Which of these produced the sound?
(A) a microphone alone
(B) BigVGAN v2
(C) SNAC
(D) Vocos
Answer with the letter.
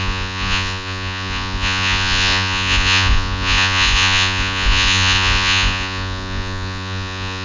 D